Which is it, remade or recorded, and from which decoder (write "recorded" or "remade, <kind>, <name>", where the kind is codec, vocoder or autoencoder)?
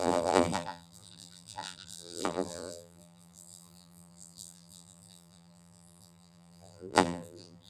remade, vocoder, BigVGAN v2